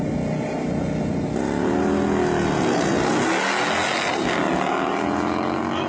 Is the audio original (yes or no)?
yes